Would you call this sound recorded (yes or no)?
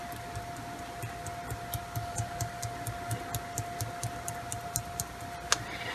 yes